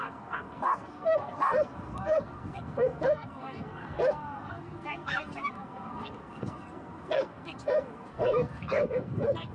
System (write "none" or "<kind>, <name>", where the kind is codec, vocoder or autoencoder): codec, SNAC